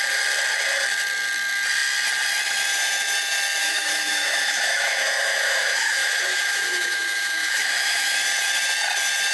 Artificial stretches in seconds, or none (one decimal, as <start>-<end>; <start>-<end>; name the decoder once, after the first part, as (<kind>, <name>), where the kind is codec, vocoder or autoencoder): 3.6-8.1 (autoencoder, DAC-VAE)